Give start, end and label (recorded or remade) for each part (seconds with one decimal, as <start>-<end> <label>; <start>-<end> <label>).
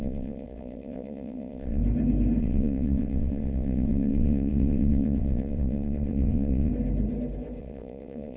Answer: 0.0-1.8 remade; 1.8-2.4 recorded; 2.4-6.7 remade; 6.7-7.6 recorded; 7.6-8.4 remade